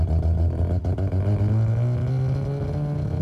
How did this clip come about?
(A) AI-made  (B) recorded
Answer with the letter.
B